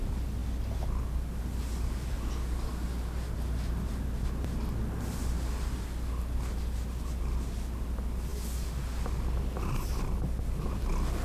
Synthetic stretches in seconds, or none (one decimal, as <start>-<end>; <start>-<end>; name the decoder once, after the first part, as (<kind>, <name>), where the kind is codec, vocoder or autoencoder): none